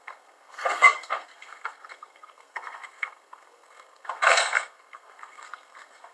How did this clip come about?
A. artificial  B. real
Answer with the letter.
A